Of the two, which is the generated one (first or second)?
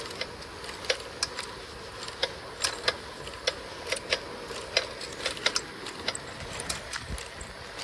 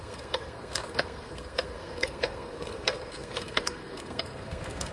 second